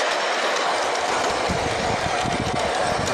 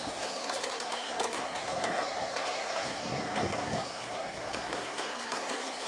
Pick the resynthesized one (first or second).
second